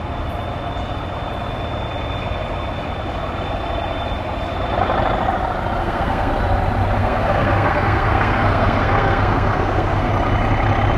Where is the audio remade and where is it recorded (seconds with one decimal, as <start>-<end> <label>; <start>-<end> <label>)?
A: 0.0-5.8 recorded; 5.8-6.3 remade; 6.3-7.0 recorded; 7.0-10.1 remade; 10.1-11.0 recorded